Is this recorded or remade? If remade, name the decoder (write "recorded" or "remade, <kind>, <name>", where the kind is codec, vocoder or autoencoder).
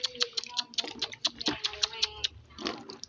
recorded